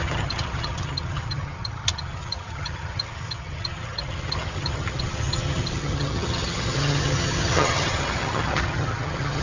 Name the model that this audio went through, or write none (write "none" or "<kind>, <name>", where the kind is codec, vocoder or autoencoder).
vocoder, HiFi-GAN